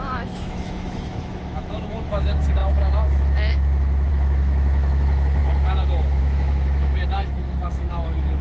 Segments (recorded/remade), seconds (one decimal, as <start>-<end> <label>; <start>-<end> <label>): 0.0-8.4 remade